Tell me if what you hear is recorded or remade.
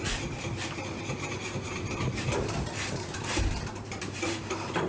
remade